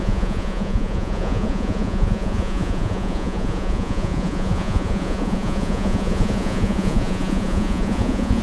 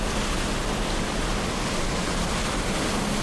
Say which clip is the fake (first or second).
first